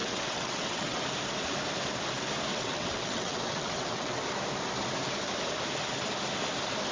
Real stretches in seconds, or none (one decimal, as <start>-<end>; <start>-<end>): 1.0-2.5; 4.2-6.9